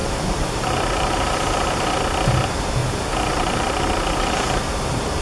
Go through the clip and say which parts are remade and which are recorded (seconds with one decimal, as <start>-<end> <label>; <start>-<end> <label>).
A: 0.0-2.0 remade; 2.0-2.8 recorded; 2.8-5.2 remade